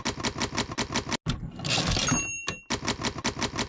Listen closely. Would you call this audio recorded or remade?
recorded